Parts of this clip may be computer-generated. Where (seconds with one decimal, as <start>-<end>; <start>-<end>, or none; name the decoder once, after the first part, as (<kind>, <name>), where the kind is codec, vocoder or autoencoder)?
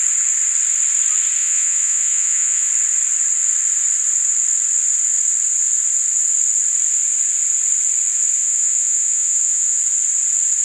1.4-2.7 (vocoder, Vocos); 8.4-9.8